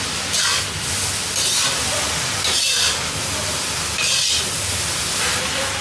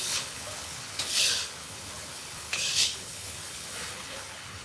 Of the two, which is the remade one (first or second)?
second